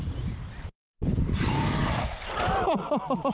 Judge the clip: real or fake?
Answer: real